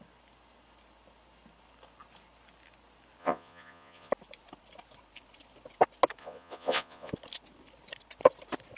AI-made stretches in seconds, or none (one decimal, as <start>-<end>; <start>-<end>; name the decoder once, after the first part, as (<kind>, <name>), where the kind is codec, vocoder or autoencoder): 3.2-4.1 (vocoder, Vocos); 6.2-7.1

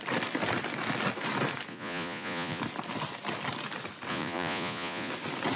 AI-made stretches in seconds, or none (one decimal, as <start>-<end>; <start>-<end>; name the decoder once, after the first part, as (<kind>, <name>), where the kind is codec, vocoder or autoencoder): 1.7-2.6 (vocoder, Vocos); 4.1-5.1

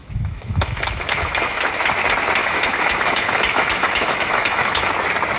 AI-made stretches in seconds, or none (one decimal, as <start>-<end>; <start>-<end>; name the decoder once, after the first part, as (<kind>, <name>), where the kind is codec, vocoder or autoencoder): 0.0-1.7 (autoencoder, DAC-VAE); 2.4-4.9